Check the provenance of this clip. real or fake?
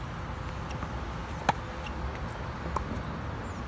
real